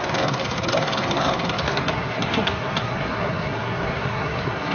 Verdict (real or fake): fake